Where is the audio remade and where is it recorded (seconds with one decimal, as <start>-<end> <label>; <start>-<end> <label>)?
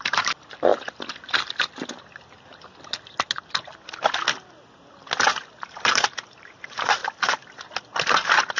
0.0-0.7 remade; 0.7-5.6 recorded; 5.6-7.0 remade; 7.0-8.6 recorded